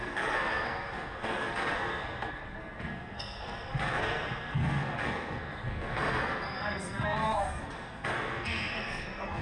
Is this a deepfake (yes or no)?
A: yes